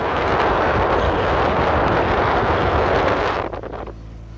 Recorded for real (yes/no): yes